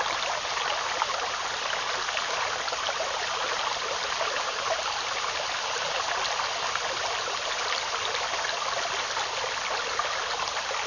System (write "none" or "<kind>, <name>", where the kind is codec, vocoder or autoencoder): none